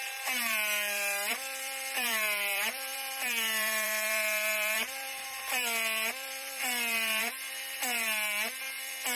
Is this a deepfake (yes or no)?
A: yes